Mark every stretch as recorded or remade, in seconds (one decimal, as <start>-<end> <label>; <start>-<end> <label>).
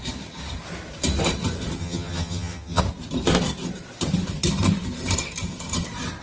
0.0-1.8 recorded; 1.8-2.8 remade; 2.8-6.2 recorded